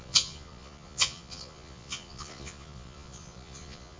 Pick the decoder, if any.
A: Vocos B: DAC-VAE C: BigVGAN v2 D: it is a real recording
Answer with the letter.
A